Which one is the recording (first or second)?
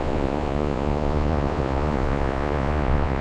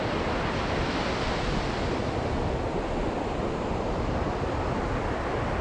second